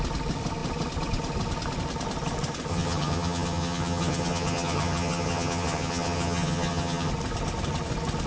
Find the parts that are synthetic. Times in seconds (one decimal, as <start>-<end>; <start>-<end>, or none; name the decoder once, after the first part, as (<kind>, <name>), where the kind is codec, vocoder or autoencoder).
2.7-7.1 (vocoder, HiFi-GAN)